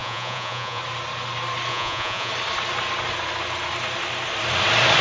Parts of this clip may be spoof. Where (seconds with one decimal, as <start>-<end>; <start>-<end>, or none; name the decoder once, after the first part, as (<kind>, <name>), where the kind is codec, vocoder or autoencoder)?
0.0-0.8 (vocoder, Vocos); 1.7-2.3